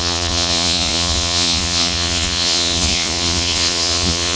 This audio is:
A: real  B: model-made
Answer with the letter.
B